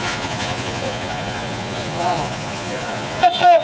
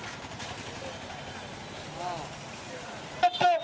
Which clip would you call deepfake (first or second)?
first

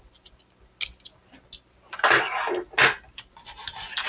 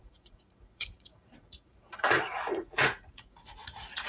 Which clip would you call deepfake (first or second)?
second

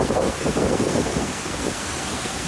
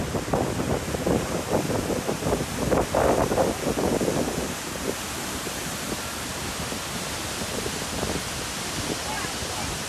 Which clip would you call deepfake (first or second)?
first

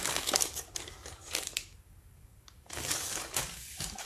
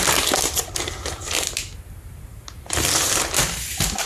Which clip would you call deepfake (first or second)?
first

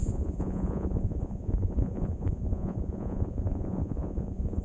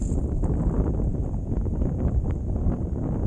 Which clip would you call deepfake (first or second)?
first